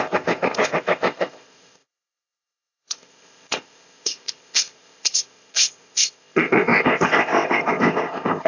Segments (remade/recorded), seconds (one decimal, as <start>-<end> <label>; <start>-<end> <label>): 0.0-8.5 remade